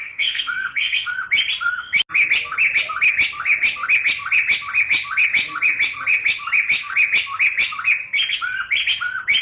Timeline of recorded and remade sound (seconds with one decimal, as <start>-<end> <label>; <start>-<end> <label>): 0.0-1.1 remade; 1.1-9.4 recorded